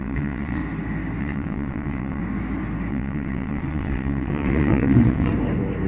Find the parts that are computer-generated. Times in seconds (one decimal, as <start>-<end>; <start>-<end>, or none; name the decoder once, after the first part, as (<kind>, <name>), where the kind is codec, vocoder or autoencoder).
0.0-0.6 (vocoder, WaveNeXt); 1.2-2.2; 2.9-5.3